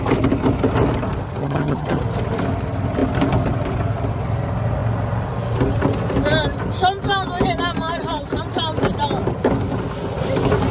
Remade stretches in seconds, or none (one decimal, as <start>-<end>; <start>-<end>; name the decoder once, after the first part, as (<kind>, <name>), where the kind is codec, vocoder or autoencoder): 1.4-2.0 (vocoder, HiFi-GAN)